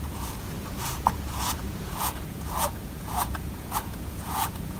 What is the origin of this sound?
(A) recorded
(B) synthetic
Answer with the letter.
B